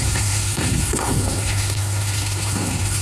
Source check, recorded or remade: remade